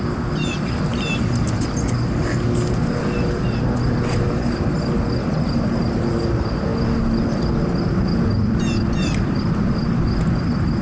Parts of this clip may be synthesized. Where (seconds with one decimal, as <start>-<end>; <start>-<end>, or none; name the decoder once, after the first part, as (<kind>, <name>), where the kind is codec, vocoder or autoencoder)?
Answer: none